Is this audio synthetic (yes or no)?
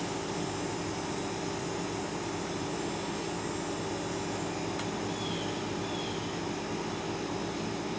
no